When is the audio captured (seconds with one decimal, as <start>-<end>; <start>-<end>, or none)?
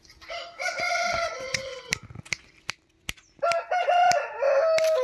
0.0-0.6; 1.9-5.0